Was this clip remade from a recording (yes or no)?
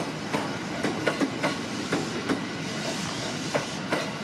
no